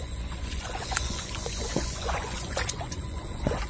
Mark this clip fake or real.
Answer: fake